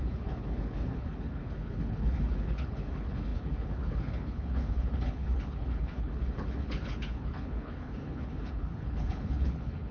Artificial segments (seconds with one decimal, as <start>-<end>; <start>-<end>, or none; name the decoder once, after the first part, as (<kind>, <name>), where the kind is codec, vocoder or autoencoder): 0.0-9.9 (codec, HILCodec)